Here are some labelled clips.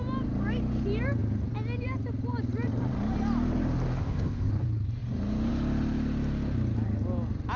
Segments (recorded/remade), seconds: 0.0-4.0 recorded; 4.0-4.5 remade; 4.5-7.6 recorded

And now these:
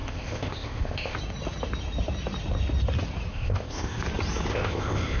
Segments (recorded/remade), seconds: 0.0-1.2 remade; 1.2-3.3 recorded; 3.3-4.0 remade; 4.0-4.5 recorded; 4.5-5.2 remade

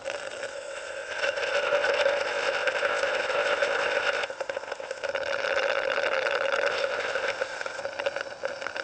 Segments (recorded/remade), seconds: 0.0-0.5 recorded; 0.5-5.1 remade; 5.1-6.7 recorded; 6.7-7.8 remade; 7.8-8.8 recorded

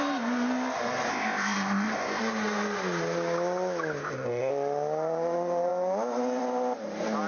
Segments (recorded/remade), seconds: 0.0-1.1 recorded; 1.1-2.2 remade; 2.2-4.0 recorded; 4.0-4.5 remade; 4.5-7.3 recorded

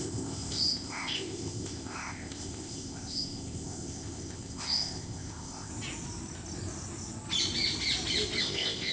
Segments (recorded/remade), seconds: 0.0-5.7 remade; 5.7-8.4 recorded; 8.4-8.9 remade

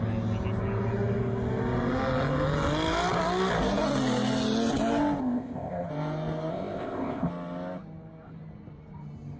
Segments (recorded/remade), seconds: 0.0-5.2 recorded; 5.2-5.9 remade; 5.9-6.5 recorded; 6.5-7.3 remade; 7.3-9.4 recorded

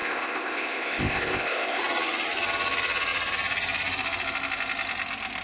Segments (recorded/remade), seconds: 0.0-1.8 remade; 1.8-5.4 recorded